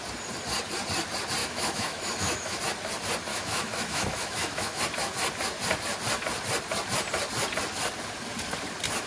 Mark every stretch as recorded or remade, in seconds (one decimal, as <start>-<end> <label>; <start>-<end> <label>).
0.0-1.4 recorded; 1.4-2.6 remade; 2.6-3.3 recorded; 3.3-4.8 remade; 4.8-9.1 recorded